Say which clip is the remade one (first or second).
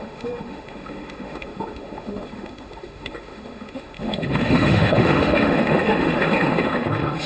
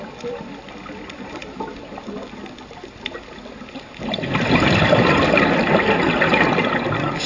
first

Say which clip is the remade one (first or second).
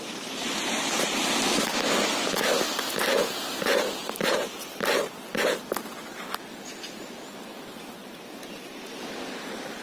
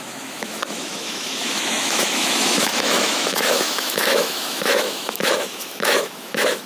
second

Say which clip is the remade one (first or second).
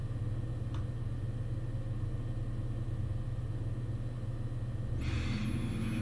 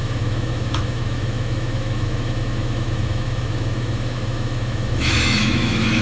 second